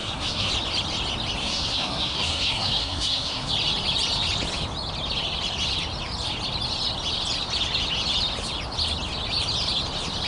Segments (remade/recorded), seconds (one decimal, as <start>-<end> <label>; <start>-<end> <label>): 0.0-0.5 remade; 0.5-1.4 recorded; 1.4-3.5 remade; 3.5-10.3 recorded